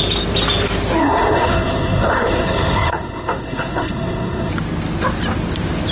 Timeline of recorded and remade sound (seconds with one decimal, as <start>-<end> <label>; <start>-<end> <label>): 0.0-1.0 recorded; 1.0-4.5 remade; 4.5-5.9 recorded